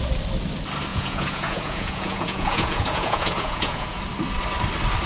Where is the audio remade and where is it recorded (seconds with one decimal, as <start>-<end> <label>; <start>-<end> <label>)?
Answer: 0.0-0.9 recorded; 0.9-4.0 remade; 4.0-5.1 recorded